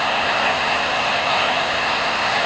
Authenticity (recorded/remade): remade